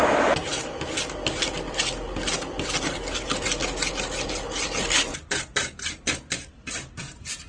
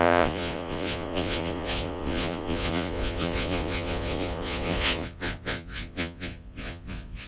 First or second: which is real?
first